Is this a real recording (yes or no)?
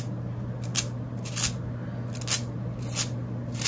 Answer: yes